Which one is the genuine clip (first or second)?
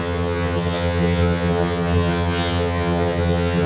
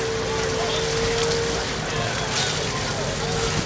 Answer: second